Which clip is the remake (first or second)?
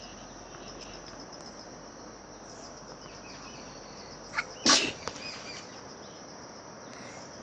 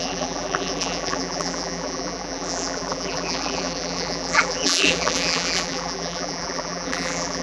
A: second